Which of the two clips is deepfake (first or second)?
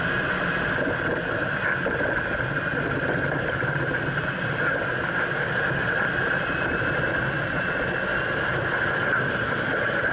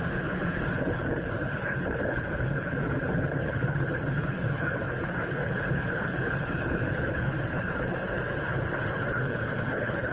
second